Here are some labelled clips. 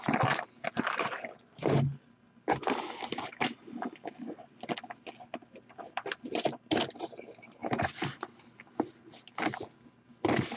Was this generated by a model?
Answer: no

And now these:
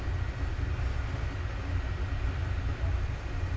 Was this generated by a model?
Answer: no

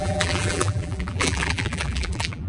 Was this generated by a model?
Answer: yes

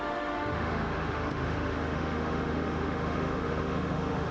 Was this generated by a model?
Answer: yes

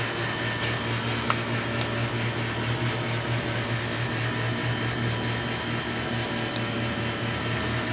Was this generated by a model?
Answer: no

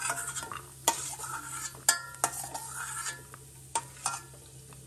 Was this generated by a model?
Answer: no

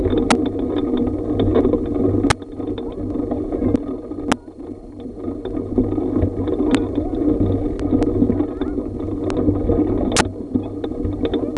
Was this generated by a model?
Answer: no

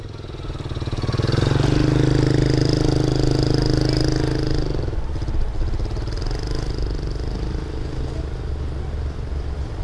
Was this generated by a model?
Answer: no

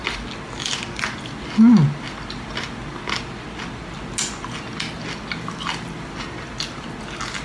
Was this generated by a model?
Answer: no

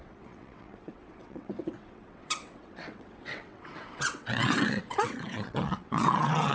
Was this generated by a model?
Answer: yes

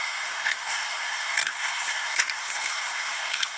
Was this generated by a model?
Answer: yes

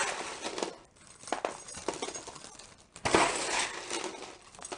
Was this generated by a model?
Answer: no